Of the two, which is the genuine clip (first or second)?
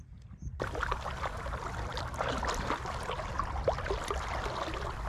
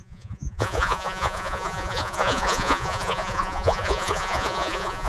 first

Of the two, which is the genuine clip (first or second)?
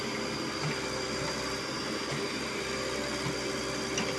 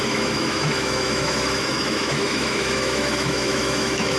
first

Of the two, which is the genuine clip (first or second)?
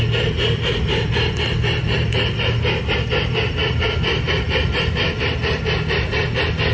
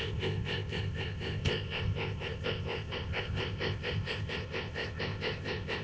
first